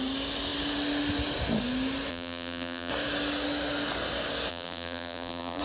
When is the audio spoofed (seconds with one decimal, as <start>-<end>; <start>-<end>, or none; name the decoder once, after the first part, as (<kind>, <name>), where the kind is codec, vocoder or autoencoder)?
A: 2.1-2.9 (vocoder, BigVGAN v2); 4.5-5.6